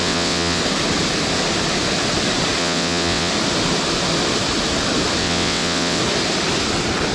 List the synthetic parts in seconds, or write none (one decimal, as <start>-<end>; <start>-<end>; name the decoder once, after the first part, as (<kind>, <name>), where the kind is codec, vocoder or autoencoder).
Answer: 0.0-0.6 (vocoder, WaveNeXt); 2.6-3.3; 5.2-6.0